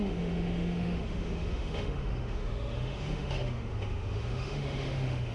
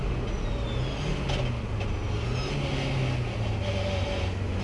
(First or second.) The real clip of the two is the second